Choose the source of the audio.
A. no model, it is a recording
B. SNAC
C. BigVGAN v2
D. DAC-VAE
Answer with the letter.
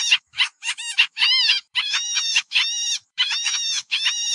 D